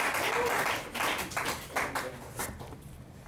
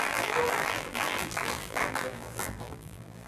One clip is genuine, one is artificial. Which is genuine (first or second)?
first